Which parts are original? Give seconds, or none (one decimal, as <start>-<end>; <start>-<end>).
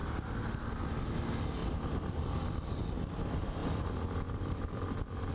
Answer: 0.0-1.6; 2.2-3.6